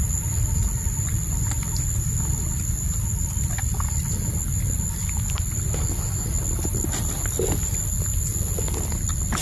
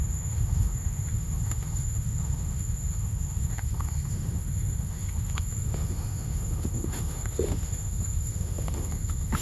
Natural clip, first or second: first